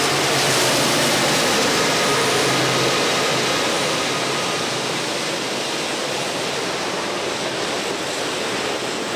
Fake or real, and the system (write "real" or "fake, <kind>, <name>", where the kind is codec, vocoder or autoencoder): real